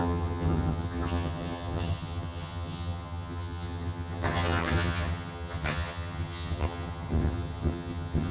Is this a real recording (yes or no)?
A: no